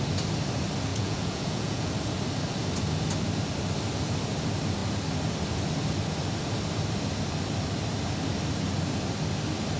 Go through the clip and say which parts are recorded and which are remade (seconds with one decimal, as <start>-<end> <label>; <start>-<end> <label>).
0.0-0.9 recorded; 0.9-1.9 remade; 1.9-9.8 recorded